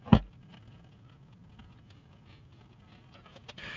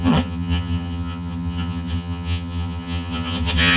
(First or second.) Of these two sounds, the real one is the first